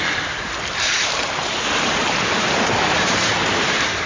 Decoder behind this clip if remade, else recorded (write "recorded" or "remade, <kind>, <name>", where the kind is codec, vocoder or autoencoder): remade, vocoder, BigVGAN v2